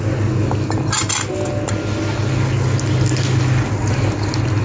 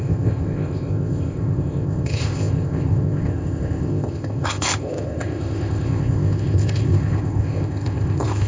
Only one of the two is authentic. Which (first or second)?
first